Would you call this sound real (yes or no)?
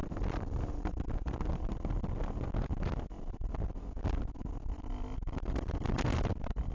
yes